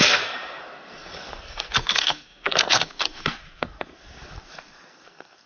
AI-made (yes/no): yes